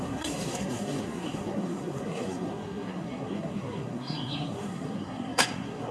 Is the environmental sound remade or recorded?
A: remade